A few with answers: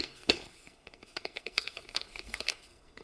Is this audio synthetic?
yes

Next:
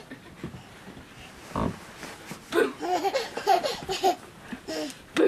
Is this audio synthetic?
no